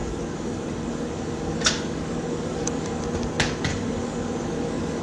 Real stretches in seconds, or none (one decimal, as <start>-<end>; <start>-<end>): 3.0-3.7

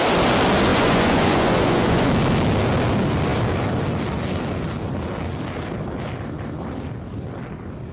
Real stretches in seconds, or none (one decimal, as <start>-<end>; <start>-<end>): 0.0-0.7; 2.1-7.9